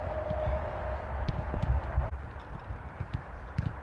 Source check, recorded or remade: remade